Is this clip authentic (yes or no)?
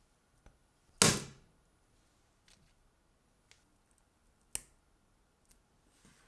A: yes